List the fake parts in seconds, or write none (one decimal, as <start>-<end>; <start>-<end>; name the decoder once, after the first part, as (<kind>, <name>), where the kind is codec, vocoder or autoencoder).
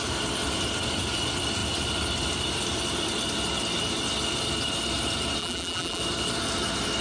5.4-6.0 (vocoder, BigVGAN v2)